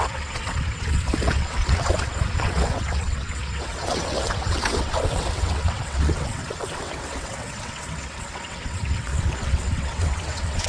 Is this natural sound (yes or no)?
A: no